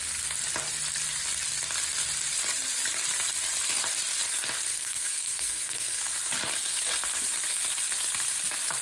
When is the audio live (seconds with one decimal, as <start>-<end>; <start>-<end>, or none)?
0.0-4.7; 6.0-8.8